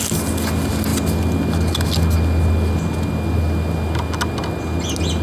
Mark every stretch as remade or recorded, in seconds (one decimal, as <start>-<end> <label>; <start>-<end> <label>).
0.0-5.2 recorded